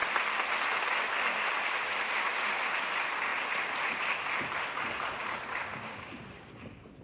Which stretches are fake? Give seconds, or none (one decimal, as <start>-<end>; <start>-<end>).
5.6-6.2